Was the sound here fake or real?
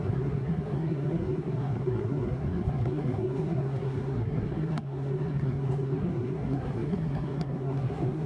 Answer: fake